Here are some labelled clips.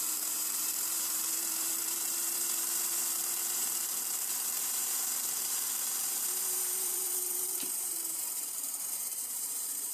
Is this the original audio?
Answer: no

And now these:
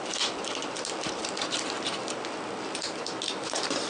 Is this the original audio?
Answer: yes